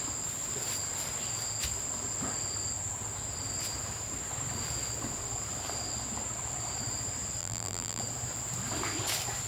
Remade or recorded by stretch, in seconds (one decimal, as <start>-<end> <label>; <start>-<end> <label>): 0.0-7.4 recorded; 7.4-8.0 remade; 8.0-9.5 recorded